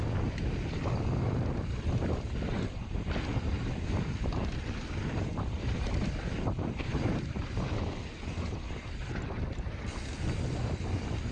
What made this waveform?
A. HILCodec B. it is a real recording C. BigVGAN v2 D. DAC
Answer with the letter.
C